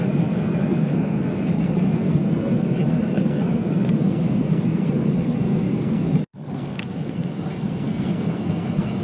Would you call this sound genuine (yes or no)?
no